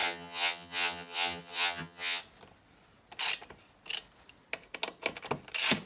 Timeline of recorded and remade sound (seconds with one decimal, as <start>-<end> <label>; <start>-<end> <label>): 0.0-2.2 remade; 2.2-5.9 recorded